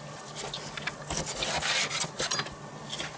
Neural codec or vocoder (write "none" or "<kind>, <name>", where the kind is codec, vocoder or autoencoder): none